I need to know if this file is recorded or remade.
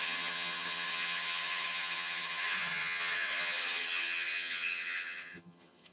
remade